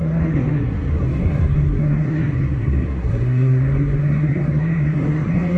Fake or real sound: fake